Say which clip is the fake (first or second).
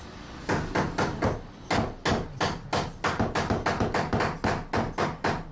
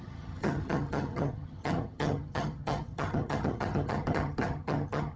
second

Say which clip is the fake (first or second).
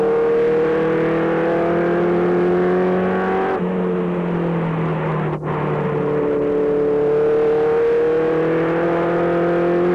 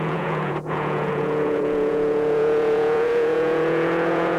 second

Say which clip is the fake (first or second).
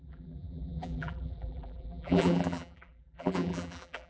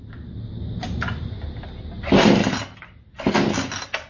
first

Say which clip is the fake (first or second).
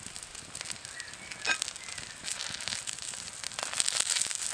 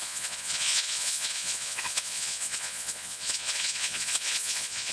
second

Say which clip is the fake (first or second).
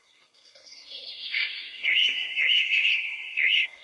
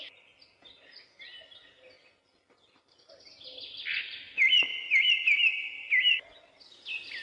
first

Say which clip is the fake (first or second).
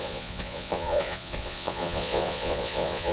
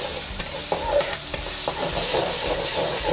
first